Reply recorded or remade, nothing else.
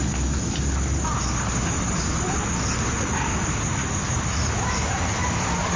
recorded